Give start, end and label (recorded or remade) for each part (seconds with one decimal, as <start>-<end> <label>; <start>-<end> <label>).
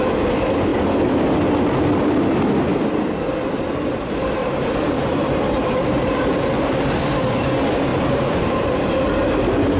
0.0-4.4 recorded; 4.4-5.4 remade; 5.4-7.9 recorded; 7.9-9.0 remade; 9.0-9.8 recorded